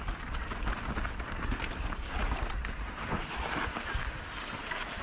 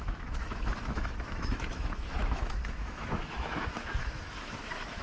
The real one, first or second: first